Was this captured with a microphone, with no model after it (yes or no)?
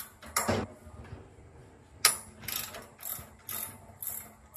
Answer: yes